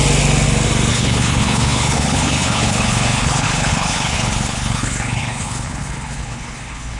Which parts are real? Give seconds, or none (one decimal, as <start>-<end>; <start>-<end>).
0.0-0.9